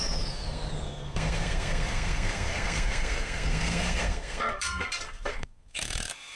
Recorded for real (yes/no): no